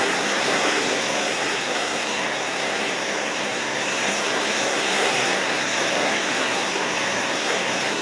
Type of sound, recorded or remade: remade